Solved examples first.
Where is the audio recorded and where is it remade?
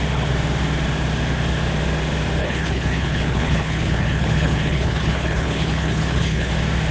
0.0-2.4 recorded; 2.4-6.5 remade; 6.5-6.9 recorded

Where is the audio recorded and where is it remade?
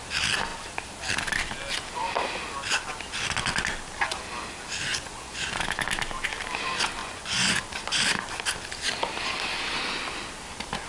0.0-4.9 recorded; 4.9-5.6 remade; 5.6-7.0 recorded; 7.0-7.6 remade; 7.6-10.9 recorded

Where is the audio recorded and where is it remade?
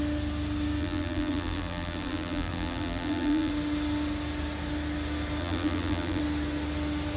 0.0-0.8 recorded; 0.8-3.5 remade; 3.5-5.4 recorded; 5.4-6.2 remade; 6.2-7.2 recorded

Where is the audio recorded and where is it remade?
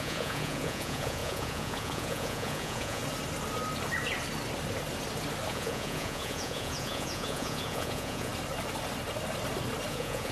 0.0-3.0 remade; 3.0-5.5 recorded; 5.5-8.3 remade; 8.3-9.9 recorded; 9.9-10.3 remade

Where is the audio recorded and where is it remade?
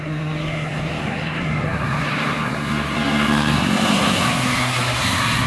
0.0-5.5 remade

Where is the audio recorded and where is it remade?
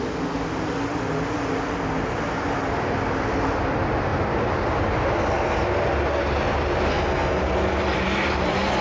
0.0-6.9 recorded; 6.9-7.4 remade; 7.4-8.8 recorded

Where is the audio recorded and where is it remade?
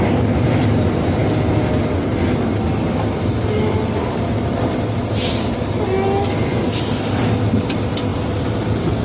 0.0-9.0 recorded